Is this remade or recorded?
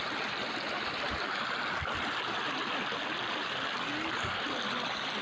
recorded